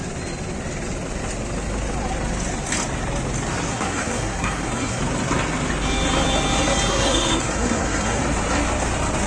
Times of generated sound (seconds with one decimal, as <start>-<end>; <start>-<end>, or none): 3.7-5.0; 6.9-8.2